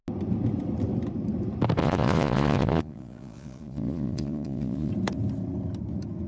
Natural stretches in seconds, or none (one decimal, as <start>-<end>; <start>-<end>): 0.0-1.8; 4.9-6.3